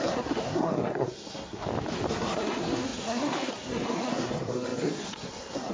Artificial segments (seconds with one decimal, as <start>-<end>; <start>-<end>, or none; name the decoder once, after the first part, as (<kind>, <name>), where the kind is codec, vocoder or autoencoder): 0.0-1.6 (codec, SNAC); 2.1-5.7